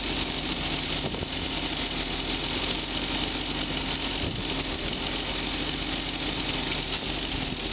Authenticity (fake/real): real